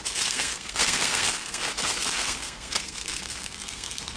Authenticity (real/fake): fake